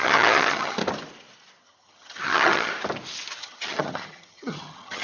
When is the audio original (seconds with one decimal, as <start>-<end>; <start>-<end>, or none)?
0.8-1.6; 2.7-3.4